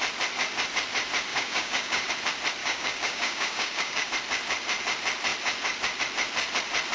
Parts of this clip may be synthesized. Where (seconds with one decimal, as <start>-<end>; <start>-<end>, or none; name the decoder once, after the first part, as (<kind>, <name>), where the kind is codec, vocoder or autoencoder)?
1.3-2.1 (codec, DAC); 2.6-4.1

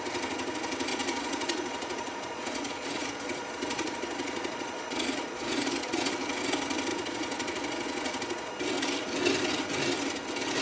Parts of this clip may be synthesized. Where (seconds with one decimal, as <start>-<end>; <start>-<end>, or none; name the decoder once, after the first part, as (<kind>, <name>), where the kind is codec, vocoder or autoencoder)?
0.9-6.1 (vocoder, Vocos); 6.9-8.5

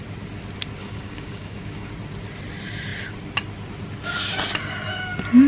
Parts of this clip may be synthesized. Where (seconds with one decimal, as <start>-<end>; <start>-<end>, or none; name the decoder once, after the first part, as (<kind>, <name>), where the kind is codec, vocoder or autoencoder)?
0.8-1.9 (codec, DAC)